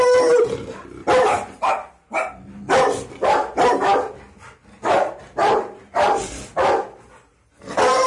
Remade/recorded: recorded